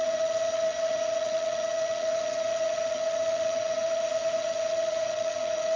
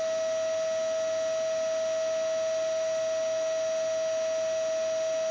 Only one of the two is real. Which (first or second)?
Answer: second